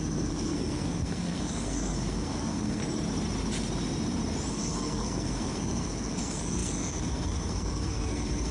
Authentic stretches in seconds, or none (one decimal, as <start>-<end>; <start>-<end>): 2.8-4.5